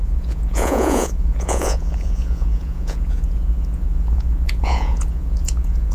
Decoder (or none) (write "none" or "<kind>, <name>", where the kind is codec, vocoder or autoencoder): vocoder, Vocos